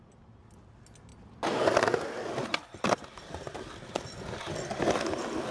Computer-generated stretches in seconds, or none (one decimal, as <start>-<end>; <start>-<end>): none